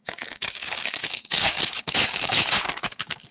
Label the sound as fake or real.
fake